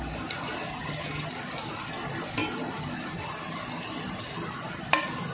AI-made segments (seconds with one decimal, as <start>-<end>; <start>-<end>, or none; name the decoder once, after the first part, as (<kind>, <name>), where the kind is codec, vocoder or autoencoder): 0.7-1.3 (vocoder, HiFi-GAN)